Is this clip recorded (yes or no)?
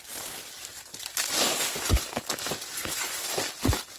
yes